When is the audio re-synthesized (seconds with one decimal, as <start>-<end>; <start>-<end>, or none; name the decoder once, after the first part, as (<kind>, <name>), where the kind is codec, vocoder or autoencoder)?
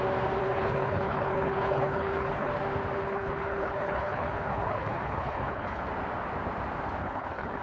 0.4-2.5 (codec, HILCodec); 3.0-5.8; 7.0-7.6